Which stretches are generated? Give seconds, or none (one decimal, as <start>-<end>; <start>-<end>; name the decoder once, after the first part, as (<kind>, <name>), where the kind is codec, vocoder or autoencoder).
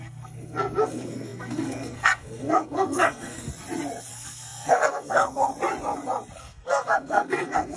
0.0-3.5 (codec, SNAC); 4.1-5.5; 6.4-7.8